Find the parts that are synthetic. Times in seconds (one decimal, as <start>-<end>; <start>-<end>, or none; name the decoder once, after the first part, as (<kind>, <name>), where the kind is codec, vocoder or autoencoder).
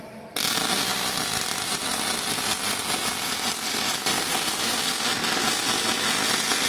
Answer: 0.9-1.8 (vocoder, BigVGAN v2); 2.8-4.6